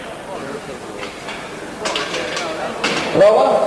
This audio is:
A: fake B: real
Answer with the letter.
B